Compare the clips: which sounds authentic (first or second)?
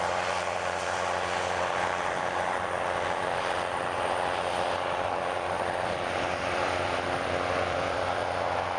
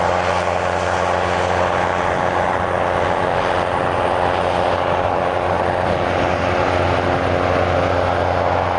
second